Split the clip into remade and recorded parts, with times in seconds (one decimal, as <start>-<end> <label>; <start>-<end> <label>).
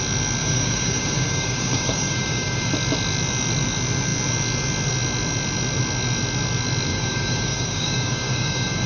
0.0-0.4 recorded; 0.4-2.7 remade; 2.7-6.9 recorded; 6.9-8.9 remade